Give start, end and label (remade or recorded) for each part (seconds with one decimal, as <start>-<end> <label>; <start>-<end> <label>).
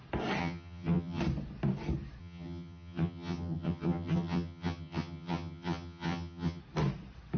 0.0-0.4 recorded; 0.4-1.2 remade; 1.2-2.2 recorded; 2.2-6.6 remade; 6.6-7.4 recorded